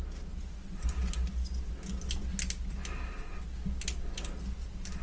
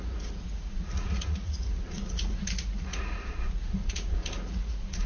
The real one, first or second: first